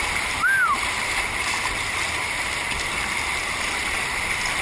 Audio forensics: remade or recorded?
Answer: recorded